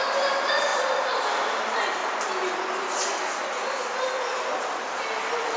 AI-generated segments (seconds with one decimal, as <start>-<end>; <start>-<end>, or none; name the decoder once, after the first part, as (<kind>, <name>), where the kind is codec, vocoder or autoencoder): none